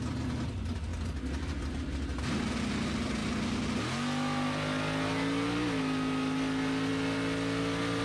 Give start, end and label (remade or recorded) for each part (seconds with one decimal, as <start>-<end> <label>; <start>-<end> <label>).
0.0-8.0 recorded